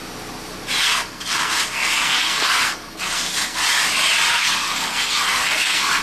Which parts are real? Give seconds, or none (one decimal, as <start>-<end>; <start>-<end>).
0.0-0.8; 3.6-4.3